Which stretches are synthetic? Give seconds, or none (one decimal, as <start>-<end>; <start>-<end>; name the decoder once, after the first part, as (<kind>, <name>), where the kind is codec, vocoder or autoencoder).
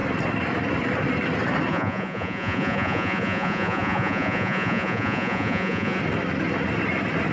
1.7-6.0 (vocoder, Vocos)